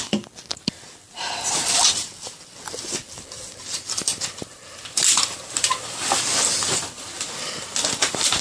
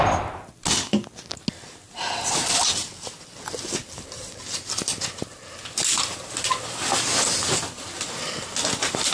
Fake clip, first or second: first